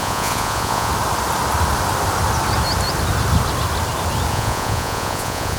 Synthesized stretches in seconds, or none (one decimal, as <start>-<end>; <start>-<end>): 0.0-0.9; 4.3-5.6